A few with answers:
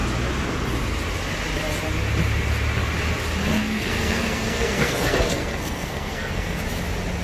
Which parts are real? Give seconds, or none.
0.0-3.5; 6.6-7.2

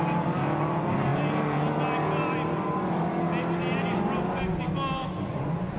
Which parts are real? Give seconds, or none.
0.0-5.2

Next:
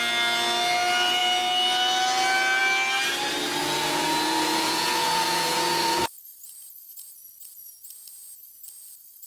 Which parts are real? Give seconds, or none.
0.0-3.6; 6.0-9.3

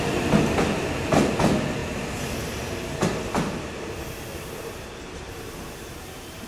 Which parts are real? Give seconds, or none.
0.0-6.5